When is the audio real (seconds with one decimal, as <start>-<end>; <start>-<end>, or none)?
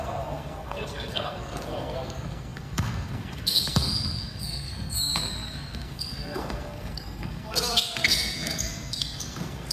none